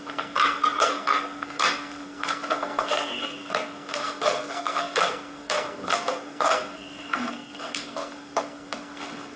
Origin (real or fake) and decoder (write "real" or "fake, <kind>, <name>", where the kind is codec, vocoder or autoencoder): fake, codec, SNAC